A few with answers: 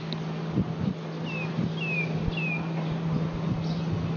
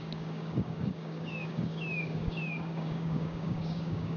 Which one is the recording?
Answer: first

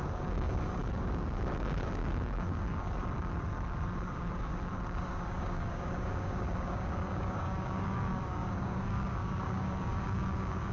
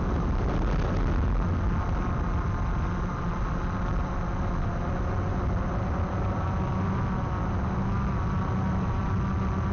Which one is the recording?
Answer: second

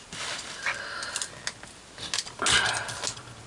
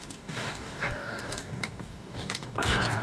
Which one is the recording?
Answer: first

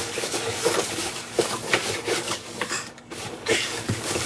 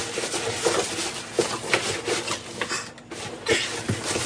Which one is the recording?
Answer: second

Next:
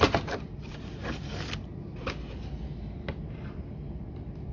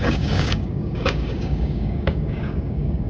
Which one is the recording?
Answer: first